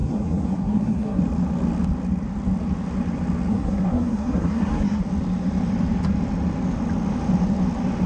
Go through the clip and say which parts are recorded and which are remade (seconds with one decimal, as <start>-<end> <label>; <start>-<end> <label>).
0.0-1.2 remade; 1.2-3.5 recorded; 3.5-5.0 remade; 5.0-8.1 recorded